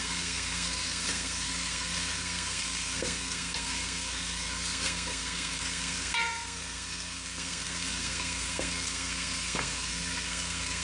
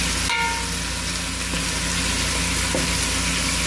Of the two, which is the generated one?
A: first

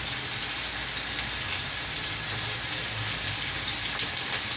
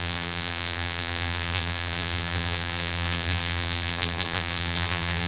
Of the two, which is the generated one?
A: second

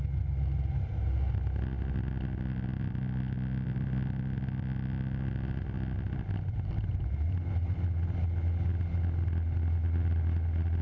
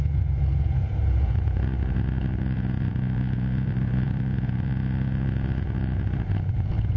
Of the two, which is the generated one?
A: second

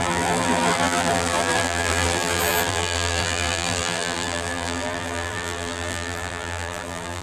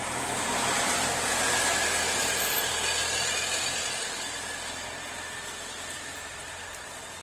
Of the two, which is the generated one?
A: first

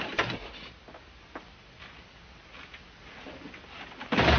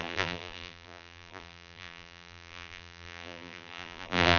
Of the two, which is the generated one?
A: second